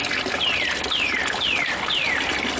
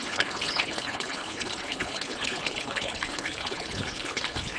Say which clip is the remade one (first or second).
second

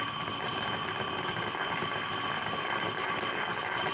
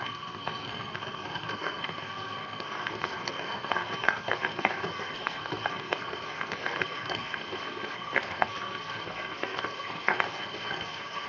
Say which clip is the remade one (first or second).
second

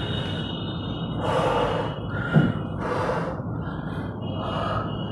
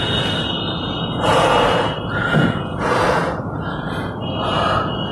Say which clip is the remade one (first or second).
second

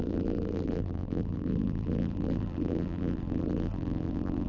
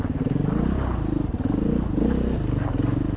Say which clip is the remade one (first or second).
first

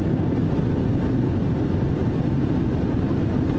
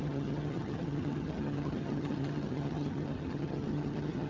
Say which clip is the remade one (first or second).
second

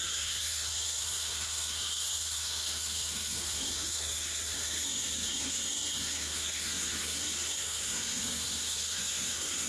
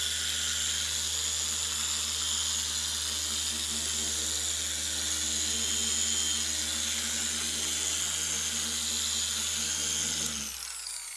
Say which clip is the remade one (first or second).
first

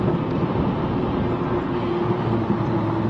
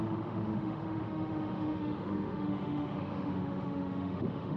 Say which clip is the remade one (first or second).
second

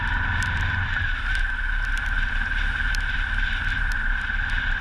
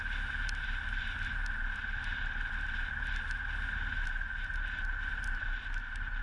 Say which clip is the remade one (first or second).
first